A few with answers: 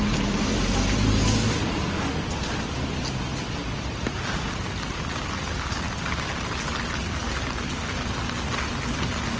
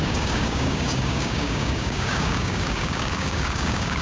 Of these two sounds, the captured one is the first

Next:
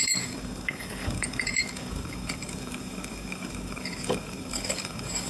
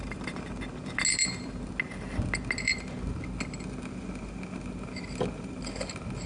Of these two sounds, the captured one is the second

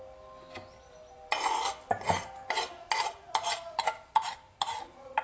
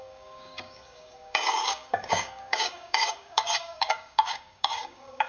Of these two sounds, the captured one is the first